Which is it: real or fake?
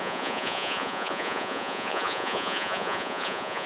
fake